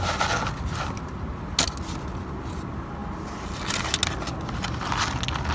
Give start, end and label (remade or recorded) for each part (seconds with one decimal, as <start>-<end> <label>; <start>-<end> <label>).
0.0-5.5 recorded